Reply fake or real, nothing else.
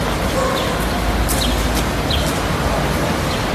real